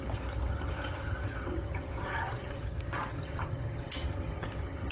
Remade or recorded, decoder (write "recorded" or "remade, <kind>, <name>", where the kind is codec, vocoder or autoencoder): remade, vocoder, HiFi-GAN